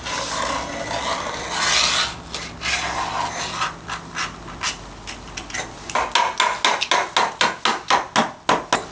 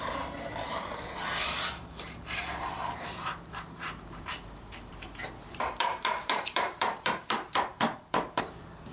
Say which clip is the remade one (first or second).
second